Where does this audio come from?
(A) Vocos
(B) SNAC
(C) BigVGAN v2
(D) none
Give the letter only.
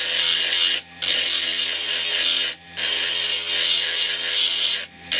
D